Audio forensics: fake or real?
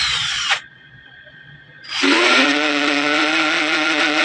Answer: fake